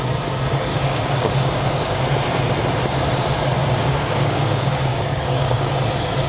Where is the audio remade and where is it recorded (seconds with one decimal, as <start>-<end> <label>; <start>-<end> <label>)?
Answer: 0.0-0.7 recorded; 0.7-2.0 remade; 2.0-3.6 recorded; 3.6-5.7 remade; 5.7-6.3 recorded